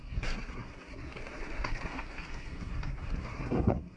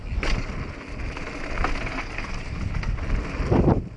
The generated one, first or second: first